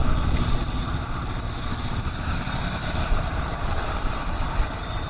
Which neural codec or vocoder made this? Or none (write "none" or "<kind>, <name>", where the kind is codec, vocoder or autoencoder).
vocoder, BigVGAN v2